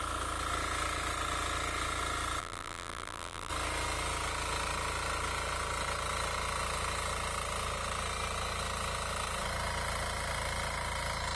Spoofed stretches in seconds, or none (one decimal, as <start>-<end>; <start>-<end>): 2.4-3.5